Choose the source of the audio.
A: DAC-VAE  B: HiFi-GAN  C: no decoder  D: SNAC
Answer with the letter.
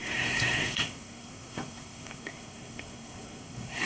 D